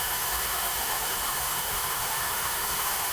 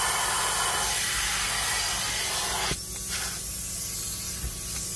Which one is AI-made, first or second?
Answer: first